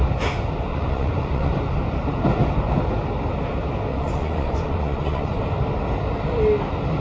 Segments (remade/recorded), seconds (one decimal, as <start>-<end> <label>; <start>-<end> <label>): 0.0-0.7 recorded; 0.7-1.5 remade; 1.5-3.9 recorded; 3.9-5.4 remade; 5.4-7.0 recorded